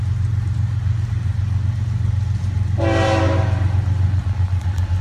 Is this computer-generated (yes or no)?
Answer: no